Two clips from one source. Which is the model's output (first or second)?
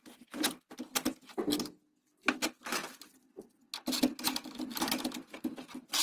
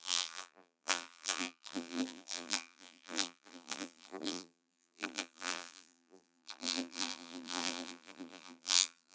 second